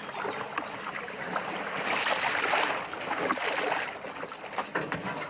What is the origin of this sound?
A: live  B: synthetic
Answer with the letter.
A